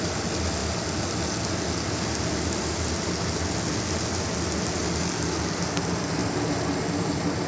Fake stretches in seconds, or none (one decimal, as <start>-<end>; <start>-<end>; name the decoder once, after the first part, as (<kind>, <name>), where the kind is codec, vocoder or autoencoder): none